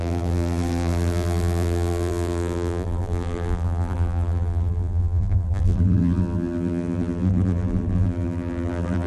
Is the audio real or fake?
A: fake